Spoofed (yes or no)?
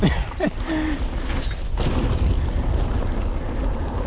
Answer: no